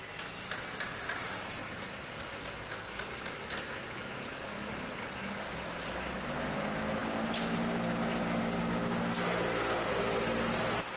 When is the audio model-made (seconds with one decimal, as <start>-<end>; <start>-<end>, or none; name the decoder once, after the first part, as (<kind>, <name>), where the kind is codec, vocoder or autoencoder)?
1.6-2.5 (vocoder, BigVGAN v2)